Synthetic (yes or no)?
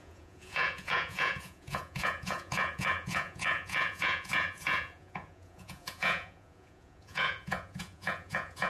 yes